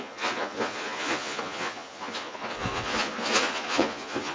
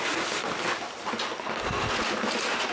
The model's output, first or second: first